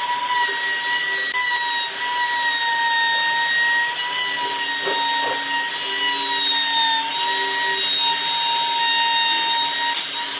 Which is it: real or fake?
real